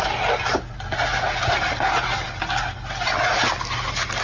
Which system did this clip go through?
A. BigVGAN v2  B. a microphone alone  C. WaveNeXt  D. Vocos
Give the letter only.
B